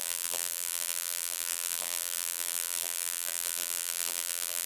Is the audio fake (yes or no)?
yes